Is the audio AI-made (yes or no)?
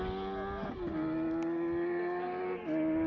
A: no